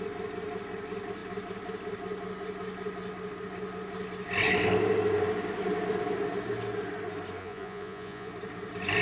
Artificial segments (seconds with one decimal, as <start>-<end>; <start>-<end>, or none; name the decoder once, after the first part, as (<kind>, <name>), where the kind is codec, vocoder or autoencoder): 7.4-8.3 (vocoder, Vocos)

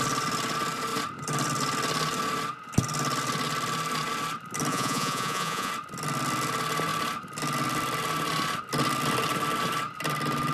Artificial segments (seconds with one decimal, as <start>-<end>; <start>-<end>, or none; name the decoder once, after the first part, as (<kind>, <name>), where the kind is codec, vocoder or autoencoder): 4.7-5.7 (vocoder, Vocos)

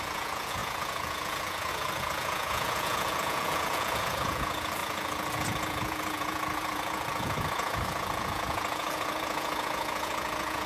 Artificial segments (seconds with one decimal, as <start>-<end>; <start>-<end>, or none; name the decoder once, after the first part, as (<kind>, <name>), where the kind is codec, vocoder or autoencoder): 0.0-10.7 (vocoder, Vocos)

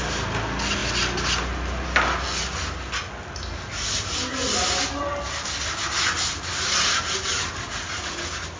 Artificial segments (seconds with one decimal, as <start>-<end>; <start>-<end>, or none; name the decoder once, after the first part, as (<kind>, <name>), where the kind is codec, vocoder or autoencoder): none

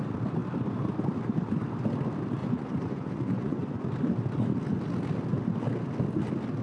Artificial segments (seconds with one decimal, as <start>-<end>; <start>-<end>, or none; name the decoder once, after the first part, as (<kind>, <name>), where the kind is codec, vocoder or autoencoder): 2.4-3.7 (vocoder, Vocos)

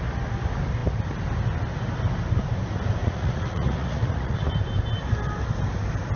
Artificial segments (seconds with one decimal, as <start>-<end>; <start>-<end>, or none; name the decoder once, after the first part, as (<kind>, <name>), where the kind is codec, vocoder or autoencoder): 3.0-4.5 (vocoder, Vocos)

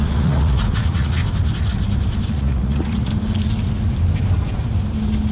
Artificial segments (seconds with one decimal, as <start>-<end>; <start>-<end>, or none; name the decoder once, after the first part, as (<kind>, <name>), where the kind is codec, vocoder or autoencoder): 0.0-1.2 (vocoder, Vocos); 2.3-3.1

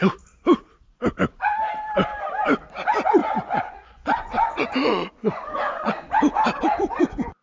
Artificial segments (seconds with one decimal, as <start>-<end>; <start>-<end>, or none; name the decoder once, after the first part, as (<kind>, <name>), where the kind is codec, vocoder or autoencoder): 3.2-7.4 (vocoder, Vocos)